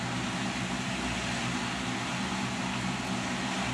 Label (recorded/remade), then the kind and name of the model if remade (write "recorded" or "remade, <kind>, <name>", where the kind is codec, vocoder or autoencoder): recorded